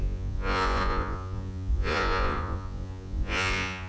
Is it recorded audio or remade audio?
remade